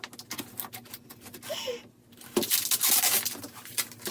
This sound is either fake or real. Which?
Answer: real